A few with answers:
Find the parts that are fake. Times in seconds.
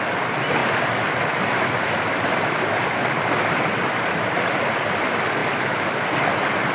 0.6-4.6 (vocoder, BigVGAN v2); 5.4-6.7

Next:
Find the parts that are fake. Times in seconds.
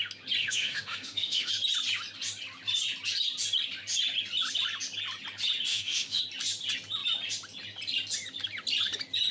0.4-1.5 (autoencoder, DAC-VAE); 5.7-6.2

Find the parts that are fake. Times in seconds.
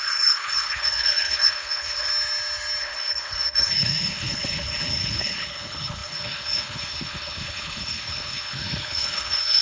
0.0-2.1 (codec, HILCodec); 2.8-9.6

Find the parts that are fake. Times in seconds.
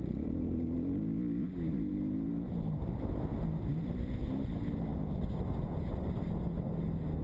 none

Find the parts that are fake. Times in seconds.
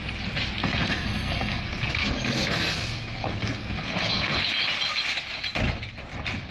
0.6-4.5 (codec, SNAC)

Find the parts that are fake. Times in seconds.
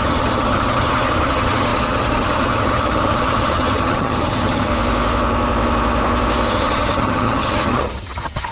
0.0-4.7 (vocoder, HiFi-GAN); 6.5-8.5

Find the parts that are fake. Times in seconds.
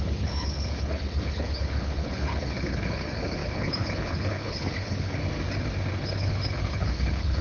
0.0-5.2 (codec, HILCodec); 6.0-7.4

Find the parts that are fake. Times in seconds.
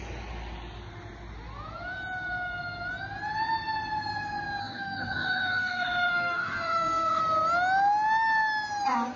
4.6-7.2 (codec, DAC)